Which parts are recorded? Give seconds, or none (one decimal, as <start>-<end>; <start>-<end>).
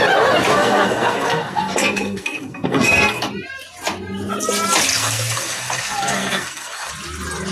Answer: 0.0-0.5; 3.3-4.9; 6.9-7.5